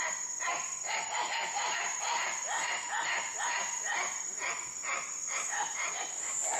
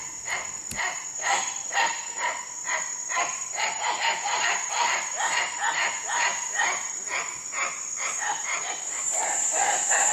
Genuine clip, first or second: first